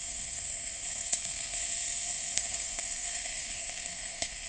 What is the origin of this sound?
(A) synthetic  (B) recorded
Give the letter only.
A